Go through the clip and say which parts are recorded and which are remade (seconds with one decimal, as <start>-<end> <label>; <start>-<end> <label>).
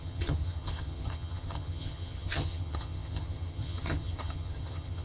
0.0-5.0 remade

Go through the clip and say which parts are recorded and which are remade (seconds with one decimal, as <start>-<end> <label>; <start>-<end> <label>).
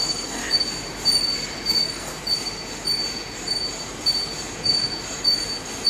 0.0-0.4 remade; 0.4-1.7 recorded; 1.7-2.1 remade; 2.1-5.9 recorded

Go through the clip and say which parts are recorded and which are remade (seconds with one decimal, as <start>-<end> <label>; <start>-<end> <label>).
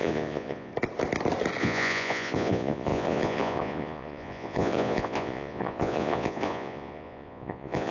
0.0-0.7 remade; 0.7-1.6 recorded; 1.6-7.9 remade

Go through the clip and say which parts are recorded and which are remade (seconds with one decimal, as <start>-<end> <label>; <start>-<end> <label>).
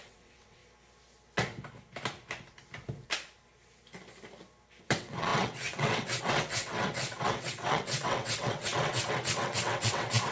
0.0-0.6 remade; 0.6-4.8 recorded; 4.8-10.3 remade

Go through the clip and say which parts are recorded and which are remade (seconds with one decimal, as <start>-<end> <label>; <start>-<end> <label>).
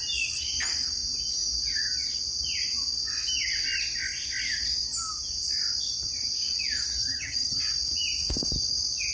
0.0-7.0 recorded; 7.0-7.6 remade; 7.6-9.1 recorded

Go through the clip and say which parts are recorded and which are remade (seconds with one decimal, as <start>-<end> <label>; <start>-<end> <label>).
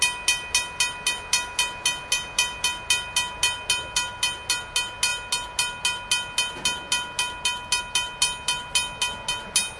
0.0-9.8 recorded